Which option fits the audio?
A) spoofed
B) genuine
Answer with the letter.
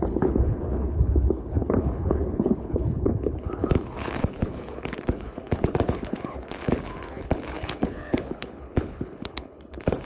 A